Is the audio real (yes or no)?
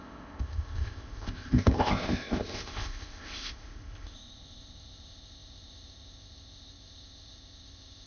no